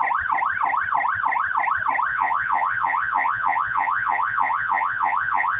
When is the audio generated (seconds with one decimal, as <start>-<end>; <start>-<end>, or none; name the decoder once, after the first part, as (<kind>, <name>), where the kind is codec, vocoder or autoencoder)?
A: 2.1-5.6 (vocoder, Vocos)